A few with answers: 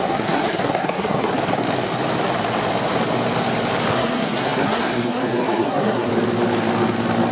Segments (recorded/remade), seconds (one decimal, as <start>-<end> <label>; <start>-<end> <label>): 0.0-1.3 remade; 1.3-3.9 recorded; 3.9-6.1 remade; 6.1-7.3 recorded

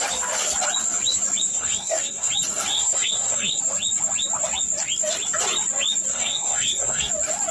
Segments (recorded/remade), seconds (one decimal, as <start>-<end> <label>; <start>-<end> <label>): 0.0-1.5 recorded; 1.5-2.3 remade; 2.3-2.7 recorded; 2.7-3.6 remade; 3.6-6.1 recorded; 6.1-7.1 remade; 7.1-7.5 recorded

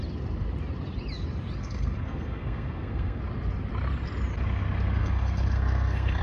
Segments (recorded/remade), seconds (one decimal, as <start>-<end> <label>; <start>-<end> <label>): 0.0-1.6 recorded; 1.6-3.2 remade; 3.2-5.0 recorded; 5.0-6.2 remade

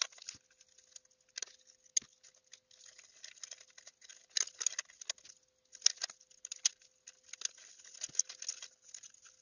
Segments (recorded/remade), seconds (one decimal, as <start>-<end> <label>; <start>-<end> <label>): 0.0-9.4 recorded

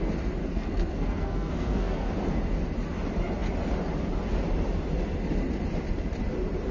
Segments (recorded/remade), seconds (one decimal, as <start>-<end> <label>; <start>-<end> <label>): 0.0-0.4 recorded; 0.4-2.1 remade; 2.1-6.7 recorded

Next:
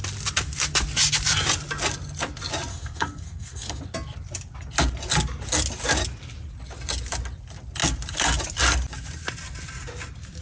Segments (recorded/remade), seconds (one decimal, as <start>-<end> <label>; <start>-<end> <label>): 0.0-2.7 recorded; 2.7-3.8 remade; 3.8-10.4 recorded

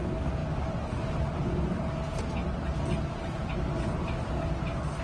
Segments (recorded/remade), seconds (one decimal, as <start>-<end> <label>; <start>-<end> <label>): 0.0-5.0 recorded